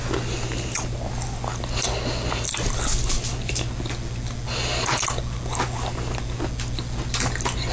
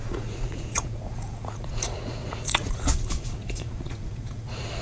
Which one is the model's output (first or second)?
second